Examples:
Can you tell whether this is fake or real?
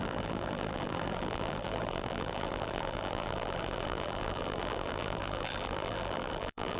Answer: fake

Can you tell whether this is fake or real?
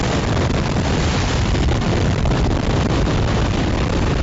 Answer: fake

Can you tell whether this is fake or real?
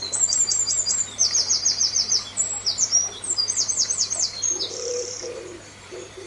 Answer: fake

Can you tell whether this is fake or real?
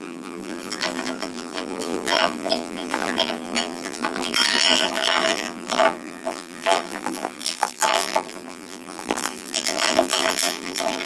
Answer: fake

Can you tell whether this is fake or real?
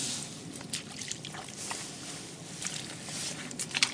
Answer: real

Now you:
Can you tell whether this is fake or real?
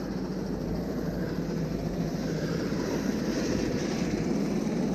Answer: fake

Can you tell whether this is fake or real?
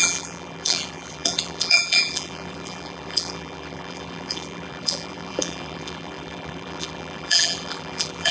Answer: fake